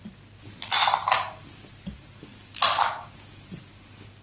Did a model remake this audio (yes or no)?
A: no